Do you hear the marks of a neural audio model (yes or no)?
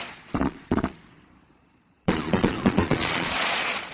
yes